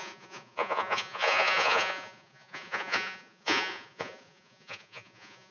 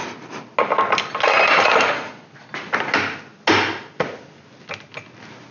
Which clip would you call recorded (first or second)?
second